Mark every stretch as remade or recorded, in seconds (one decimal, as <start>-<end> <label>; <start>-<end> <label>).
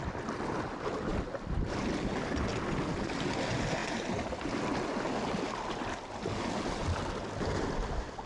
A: 0.0-8.3 recorded